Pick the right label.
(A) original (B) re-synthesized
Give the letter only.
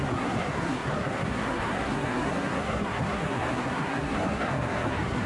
B